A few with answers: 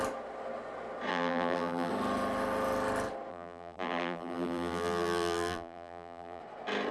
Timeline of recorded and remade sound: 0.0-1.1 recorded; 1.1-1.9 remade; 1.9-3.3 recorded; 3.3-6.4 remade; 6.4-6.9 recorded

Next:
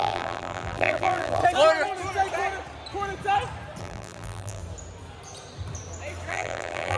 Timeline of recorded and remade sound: 0.0-1.4 remade; 1.4-3.8 recorded; 3.8-4.6 remade; 4.6-6.3 recorded; 6.3-7.0 remade

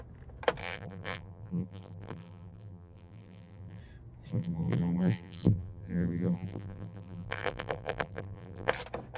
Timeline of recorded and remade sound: 0.0-0.6 recorded; 0.6-3.8 remade; 3.8-4.3 recorded; 4.3-8.7 remade; 8.7-9.2 recorded